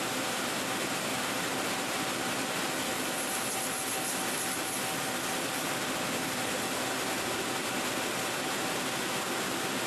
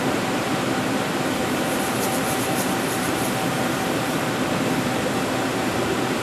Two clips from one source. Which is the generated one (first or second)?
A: second